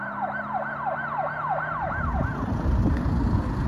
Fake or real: real